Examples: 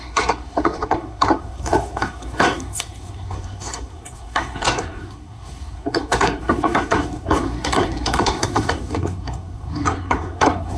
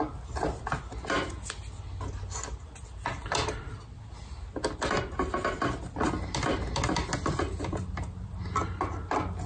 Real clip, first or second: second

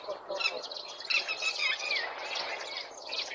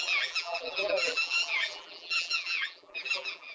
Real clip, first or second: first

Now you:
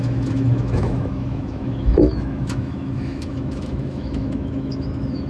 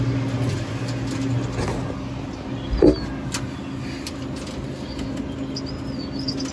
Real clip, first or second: second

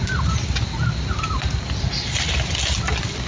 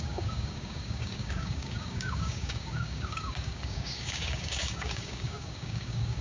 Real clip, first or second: first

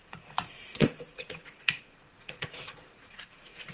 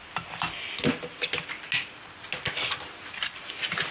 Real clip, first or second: second